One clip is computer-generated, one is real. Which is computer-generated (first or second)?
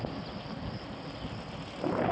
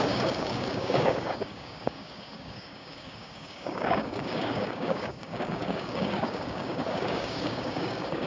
second